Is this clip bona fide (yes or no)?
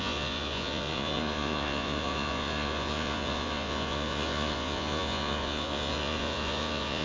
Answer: no